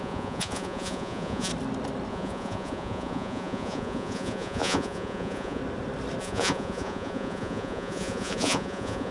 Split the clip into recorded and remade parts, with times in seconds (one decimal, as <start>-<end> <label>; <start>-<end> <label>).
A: 0.0-1.5 remade; 1.5-2.1 recorded; 2.1-5.6 remade; 5.6-6.2 recorded; 6.2-9.1 remade